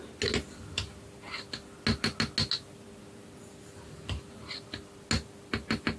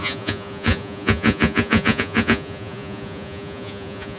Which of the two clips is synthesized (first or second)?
second